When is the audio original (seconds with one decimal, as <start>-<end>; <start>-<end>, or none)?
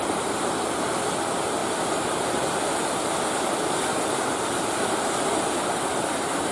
0.0-6.5